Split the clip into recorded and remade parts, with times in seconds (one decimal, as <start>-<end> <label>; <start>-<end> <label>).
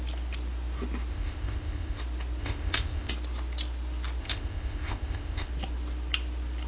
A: 0.0-1.1 recorded; 1.1-2.0 remade; 2.0-2.4 recorded; 2.4-3.1 remade; 3.1-4.2 recorded; 4.2-5.5 remade; 5.5-6.7 recorded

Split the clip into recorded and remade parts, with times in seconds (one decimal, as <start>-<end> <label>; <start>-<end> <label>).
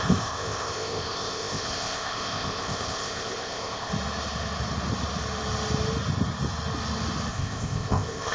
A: 0.0-3.9 remade; 3.9-7.3 recorded; 7.3-8.3 remade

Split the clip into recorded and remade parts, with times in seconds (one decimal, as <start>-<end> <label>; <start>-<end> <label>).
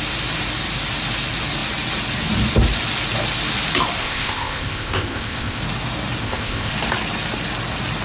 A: 0.0-4.0 recorded; 4.0-5.6 remade; 5.6-6.2 recorded; 6.2-6.7 remade; 6.7-8.0 recorded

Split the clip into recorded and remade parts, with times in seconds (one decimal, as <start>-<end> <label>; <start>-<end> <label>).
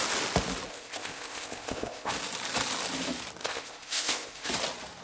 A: 0.0-0.7 recorded; 0.7-2.1 remade; 2.1-3.4 recorded; 3.4-4.5 remade; 4.5-5.0 recorded